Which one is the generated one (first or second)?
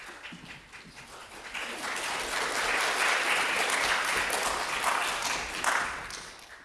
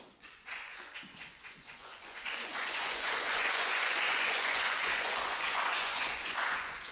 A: second